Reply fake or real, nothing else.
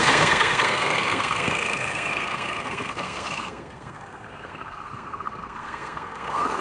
fake